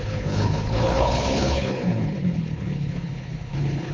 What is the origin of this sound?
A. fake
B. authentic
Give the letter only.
A